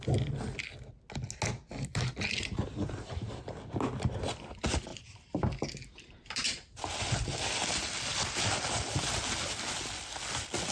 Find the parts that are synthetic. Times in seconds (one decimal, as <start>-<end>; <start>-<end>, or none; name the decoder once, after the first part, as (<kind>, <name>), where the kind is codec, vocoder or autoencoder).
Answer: 4.9-6.8 (vocoder, BigVGAN v2)